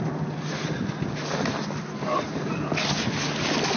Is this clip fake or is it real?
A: real